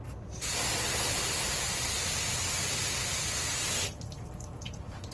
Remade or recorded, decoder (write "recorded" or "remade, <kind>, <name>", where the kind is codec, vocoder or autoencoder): recorded